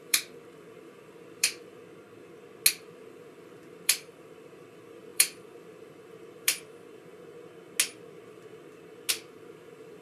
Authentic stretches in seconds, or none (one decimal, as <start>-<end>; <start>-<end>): 1.8-2.7; 7.1-9.1